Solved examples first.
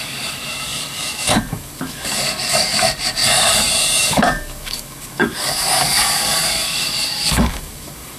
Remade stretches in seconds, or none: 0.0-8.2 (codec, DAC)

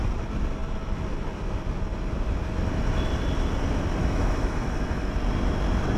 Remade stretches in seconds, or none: 4.0-5.1 (autoencoder, DAC-VAE)

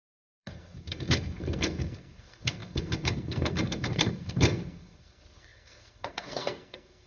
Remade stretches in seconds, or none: 0.0-7.1 (codec, SNAC)

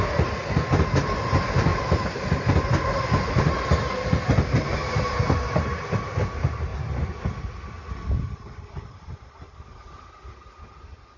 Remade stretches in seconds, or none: none

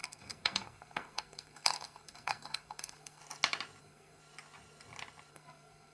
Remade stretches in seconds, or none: 0.0-3.2 (codec, SNAC); 3.8-4.2; 5.3-5.9

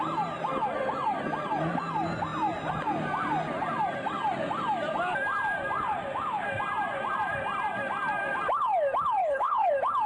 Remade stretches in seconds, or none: 9.2-9.7 (codec, HILCodec)